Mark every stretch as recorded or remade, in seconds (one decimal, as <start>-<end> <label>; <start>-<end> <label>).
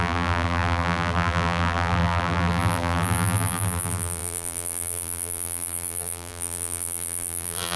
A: 0.0-7.8 remade